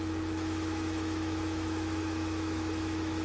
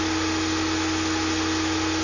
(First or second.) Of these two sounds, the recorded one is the second